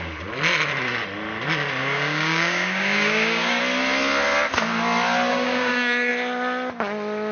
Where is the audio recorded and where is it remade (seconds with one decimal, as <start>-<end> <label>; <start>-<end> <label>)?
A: 0.0-1.8 recorded; 1.8-3.6 remade; 3.6-5.3 recorded; 5.3-6.1 remade; 6.1-7.3 recorded